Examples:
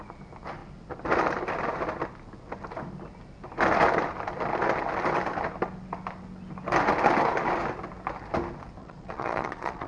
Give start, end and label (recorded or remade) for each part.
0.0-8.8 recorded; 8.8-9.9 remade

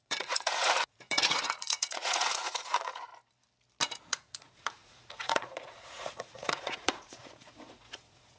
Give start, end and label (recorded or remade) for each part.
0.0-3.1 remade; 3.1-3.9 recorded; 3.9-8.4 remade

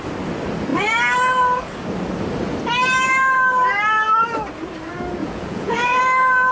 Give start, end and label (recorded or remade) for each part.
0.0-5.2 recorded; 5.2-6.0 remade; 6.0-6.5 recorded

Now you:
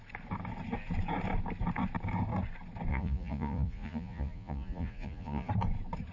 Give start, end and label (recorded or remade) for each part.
0.0-2.9 recorded; 2.9-5.5 remade; 5.5-6.1 recorded

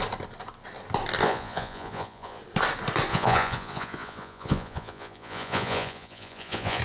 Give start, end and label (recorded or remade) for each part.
0.0-1.2 recorded; 1.2-2.4 remade; 2.4-3.1 recorded; 3.1-6.8 remade

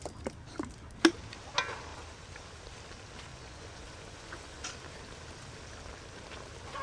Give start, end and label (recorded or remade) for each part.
0.0-3.3 recorded; 3.3-4.7 remade; 4.7-6.8 recorded

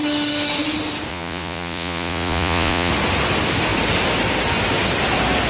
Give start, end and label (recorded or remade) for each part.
0.0-1.1 recorded; 1.1-2.9 remade; 2.9-5.5 recorded